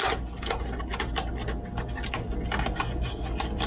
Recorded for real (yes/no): yes